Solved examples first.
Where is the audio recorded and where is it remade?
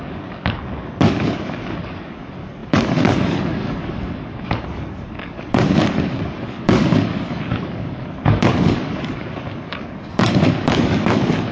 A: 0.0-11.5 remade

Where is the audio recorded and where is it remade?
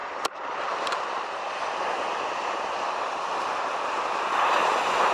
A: 0.0-5.1 recorded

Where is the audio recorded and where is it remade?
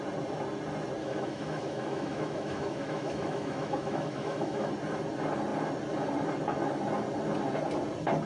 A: 0.0-1.0 recorded; 1.0-4.7 remade; 4.7-8.3 recorded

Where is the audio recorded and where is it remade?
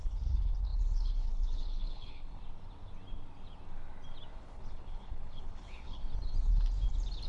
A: 0.0-2.4 remade; 2.4-4.3 recorded; 4.3-6.0 remade; 6.0-7.3 recorded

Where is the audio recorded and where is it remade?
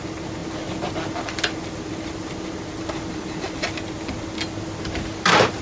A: 0.0-5.6 recorded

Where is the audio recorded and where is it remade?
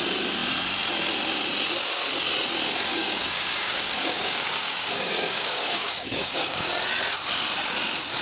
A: 0.0-2.9 recorded; 2.9-6.7 remade; 6.7-8.2 recorded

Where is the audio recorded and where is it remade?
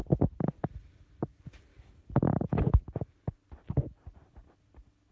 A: 0.0-5.1 recorded